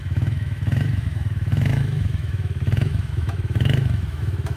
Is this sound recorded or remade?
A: remade